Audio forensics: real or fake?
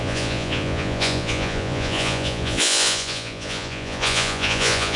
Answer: fake